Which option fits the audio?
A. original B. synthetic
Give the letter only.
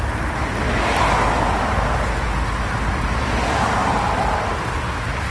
A